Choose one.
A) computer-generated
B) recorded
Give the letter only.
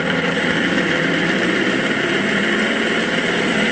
A